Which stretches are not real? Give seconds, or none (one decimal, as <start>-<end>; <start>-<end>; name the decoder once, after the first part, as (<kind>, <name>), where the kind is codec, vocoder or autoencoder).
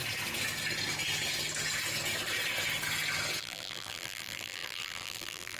3.4-5.6 (vocoder, BigVGAN v2)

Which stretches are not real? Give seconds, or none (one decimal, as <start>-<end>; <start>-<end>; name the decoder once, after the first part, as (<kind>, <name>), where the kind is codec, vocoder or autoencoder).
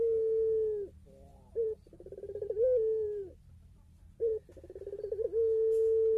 1.3-5.0 (vocoder, BigVGAN v2)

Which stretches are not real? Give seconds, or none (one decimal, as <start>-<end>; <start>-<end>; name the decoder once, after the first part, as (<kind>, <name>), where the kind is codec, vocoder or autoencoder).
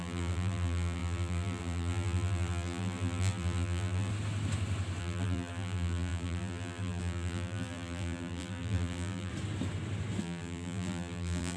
0.0-4.1 (vocoder, BigVGAN v2); 5.0-9.3; 10.2-11.6